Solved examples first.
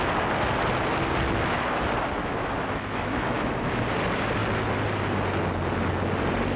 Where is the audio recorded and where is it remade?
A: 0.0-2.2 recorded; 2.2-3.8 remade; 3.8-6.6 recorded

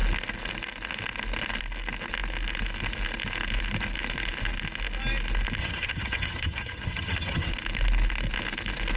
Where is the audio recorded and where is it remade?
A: 0.0-5.6 recorded; 5.6-7.5 remade; 7.5-9.0 recorded

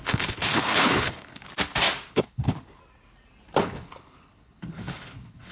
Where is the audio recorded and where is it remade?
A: 0.0-1.5 remade; 1.5-2.1 recorded; 2.1-2.8 remade; 2.8-3.6 recorded; 3.6-5.5 remade

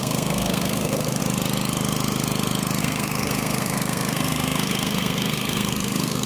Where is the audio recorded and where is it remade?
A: 0.0-1.2 remade; 1.2-2.8 recorded; 2.8-6.3 remade

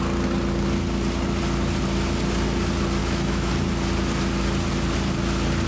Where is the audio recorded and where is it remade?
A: 0.0-3.0 recorded; 3.0-3.5 remade; 3.5-5.7 recorded

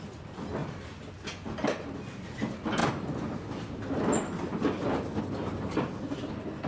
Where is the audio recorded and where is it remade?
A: 0.0-6.7 recorded

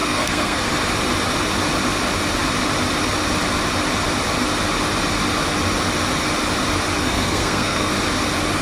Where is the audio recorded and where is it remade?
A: 0.0-0.7 remade; 0.7-7.0 recorded; 7.0-7.9 remade; 7.9-8.6 recorded